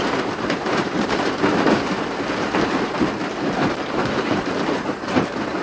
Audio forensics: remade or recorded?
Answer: remade